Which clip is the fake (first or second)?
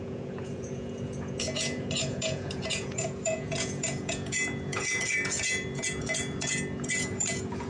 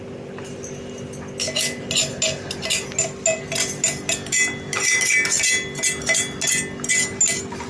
first